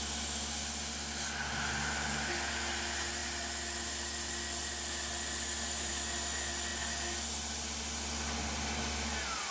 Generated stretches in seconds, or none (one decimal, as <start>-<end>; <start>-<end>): none